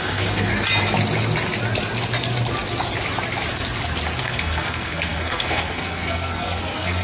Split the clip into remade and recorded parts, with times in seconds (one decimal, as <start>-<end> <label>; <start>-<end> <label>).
0.0-0.5 remade; 0.5-4.2 recorded; 4.2-7.0 remade